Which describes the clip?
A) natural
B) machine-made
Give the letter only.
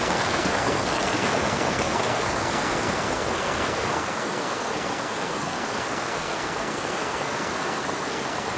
B